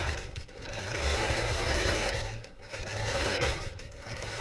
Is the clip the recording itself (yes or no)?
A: no